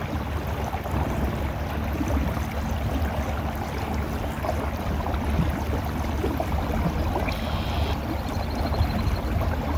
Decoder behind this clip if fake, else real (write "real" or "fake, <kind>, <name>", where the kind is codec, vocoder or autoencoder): real